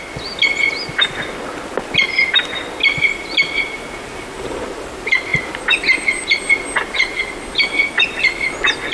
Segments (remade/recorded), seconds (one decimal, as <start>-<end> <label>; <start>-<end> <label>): 0.0-8.9 recorded